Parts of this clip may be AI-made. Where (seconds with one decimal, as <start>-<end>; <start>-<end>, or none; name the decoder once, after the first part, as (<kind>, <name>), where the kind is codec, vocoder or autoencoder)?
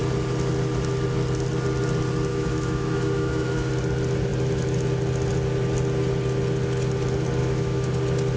2.3-3.7 (autoencoder, DAC-VAE); 7.4-7.9